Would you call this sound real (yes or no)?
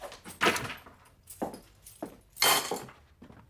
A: yes